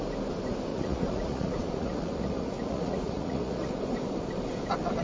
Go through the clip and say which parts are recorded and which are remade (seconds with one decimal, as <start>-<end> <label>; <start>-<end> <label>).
0.0-0.7 recorded; 0.7-3.7 remade; 3.7-5.0 recorded